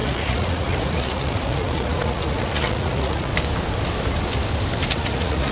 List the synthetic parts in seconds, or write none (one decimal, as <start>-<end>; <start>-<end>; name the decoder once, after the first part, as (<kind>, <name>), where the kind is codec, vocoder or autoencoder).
0.0-3.3 (vocoder, Vocos); 4.9-5.5